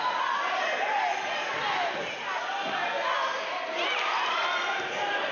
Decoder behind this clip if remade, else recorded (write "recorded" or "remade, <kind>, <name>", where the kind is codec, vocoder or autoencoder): recorded